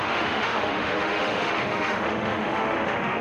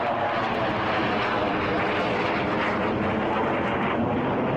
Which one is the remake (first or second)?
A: first